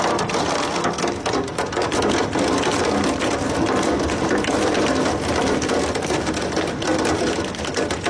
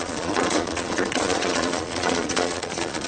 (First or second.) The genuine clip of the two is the first